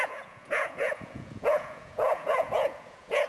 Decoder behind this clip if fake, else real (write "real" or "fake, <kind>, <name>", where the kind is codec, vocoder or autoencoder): fake, vocoder, Vocos